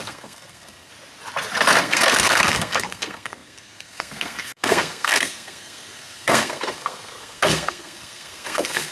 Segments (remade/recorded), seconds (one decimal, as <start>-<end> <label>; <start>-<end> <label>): 0.0-0.9 remade; 0.9-1.8 recorded; 1.8-8.9 remade